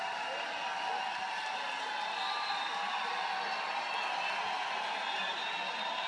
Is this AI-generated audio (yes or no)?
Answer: no